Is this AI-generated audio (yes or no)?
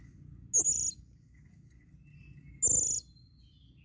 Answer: no